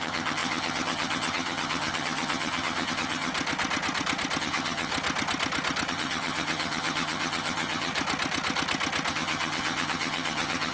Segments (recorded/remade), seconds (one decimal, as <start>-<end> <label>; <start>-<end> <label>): 0.0-3.3 remade; 3.3-4.4 recorded; 4.4-4.9 remade; 4.9-5.9 recorded; 5.9-7.9 remade; 7.9-9.1 recorded; 9.1-10.7 remade